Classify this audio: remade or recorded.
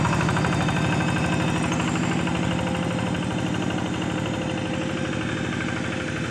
recorded